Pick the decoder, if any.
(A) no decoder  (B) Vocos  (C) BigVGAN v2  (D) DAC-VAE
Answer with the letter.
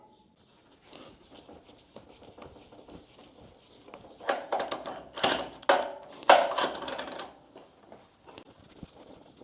A